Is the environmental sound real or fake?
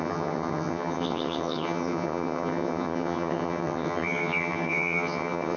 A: fake